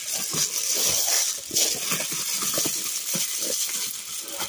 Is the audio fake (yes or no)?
no